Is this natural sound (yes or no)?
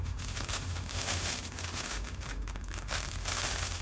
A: no